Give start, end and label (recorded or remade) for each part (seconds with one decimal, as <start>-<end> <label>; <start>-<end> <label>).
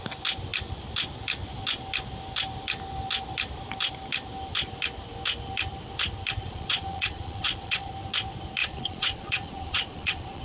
0.0-6.4 recorded; 6.4-7.9 remade; 7.9-8.6 recorded; 8.6-10.4 remade